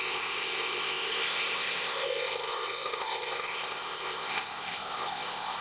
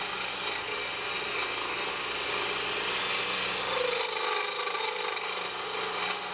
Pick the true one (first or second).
second